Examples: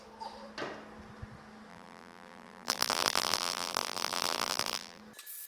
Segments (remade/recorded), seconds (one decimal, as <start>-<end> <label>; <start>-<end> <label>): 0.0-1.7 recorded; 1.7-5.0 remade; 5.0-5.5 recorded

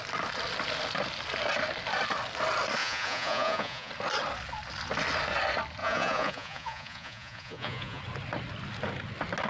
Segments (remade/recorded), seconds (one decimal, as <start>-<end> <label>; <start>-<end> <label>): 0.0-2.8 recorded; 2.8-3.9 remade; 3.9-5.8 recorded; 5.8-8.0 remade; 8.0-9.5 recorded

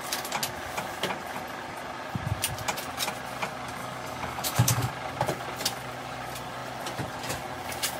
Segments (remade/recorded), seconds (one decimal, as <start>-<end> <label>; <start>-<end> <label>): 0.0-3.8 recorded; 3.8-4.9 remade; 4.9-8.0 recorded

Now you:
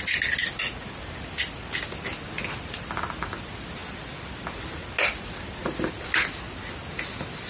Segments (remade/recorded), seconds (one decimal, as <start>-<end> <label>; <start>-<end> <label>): 0.0-7.5 recorded

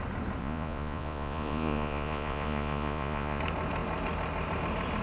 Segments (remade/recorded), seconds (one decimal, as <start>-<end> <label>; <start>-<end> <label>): 0.0-0.4 recorded; 0.4-3.4 remade; 3.4-5.0 recorded

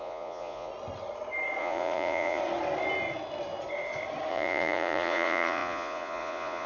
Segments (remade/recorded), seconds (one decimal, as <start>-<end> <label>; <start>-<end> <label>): 0.0-0.7 remade; 0.7-1.6 recorded; 1.6-2.4 remade; 2.4-4.3 recorded; 4.3-6.7 remade

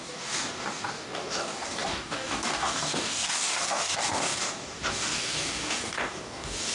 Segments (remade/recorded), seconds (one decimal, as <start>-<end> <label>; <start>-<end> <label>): 0.0-6.7 remade